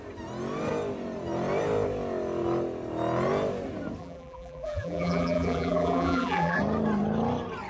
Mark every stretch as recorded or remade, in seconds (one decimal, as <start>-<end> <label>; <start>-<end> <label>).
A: 0.0-4.0 recorded; 4.0-6.6 remade; 6.6-7.7 recorded